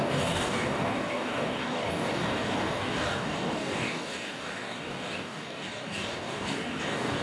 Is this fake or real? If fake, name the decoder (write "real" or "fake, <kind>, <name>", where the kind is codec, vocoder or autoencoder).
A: fake, codec, DAC